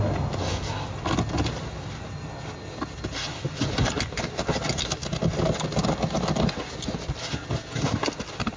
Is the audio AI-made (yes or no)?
no